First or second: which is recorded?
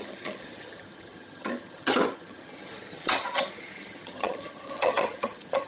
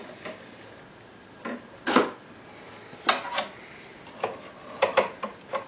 second